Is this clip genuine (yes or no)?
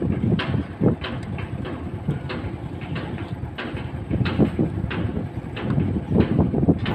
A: yes